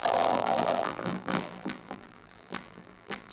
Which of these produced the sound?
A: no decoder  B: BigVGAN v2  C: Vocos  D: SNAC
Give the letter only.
B